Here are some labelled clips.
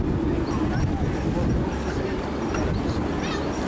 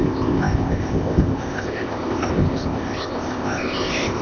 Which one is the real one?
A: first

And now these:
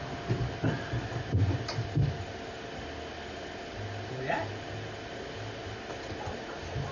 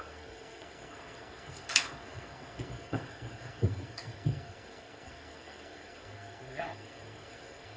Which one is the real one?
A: first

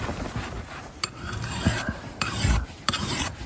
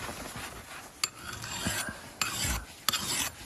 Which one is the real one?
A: second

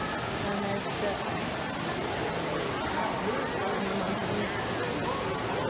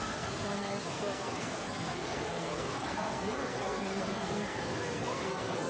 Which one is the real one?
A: first